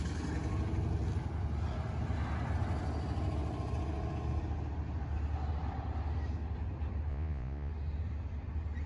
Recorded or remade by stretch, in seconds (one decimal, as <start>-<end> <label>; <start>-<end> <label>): 0.0-7.1 recorded; 7.1-7.7 remade; 7.7-8.9 recorded